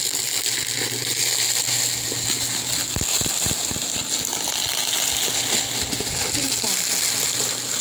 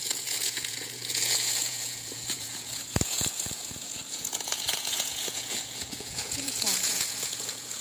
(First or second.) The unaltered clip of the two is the first